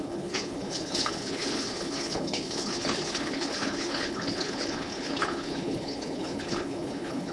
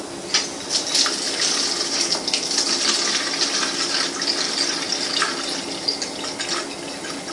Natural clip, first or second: second